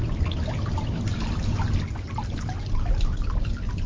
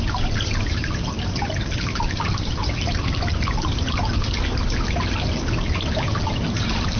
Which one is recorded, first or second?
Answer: first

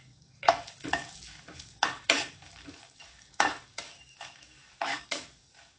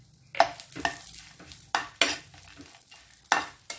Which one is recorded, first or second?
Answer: second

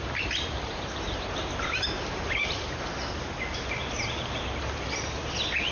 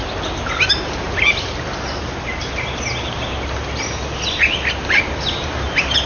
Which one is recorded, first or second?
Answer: second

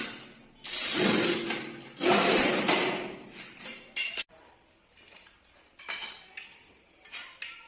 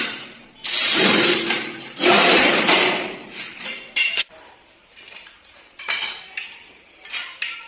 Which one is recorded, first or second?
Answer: first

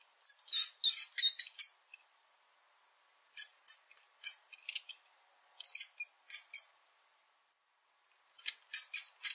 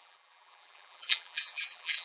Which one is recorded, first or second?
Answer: first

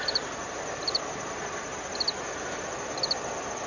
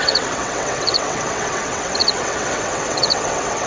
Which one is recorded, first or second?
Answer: first